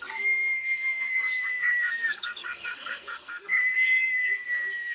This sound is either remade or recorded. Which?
remade